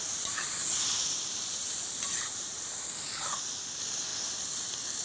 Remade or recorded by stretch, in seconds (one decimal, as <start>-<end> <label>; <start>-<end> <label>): 0.0-0.6 recorded; 0.6-3.6 remade; 3.6-5.0 recorded